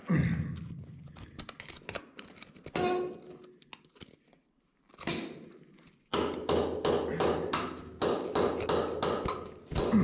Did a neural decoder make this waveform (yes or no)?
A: no